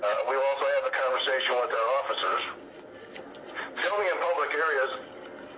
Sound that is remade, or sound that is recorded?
recorded